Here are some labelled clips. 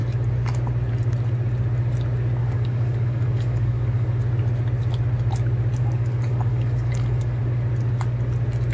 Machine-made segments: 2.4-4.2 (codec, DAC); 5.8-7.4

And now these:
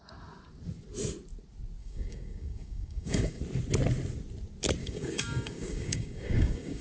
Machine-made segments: 1.8-3.4 (codec, DAC); 4.8-6.8

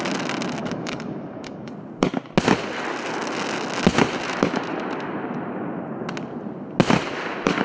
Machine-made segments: 0.6-1.7 (codec, DAC)

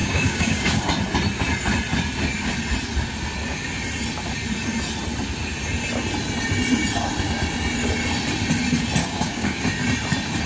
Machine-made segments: 0.0-0.8 (codec, DAC); 9.0-9.6

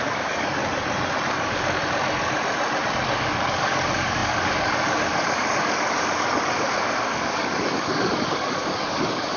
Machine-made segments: 0.0-0.6 (codec, DAC); 1.3-1.8; 3.2-9.4

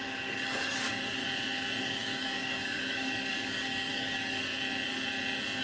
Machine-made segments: 0.0-1.2 (codec, DAC); 1.8-4.5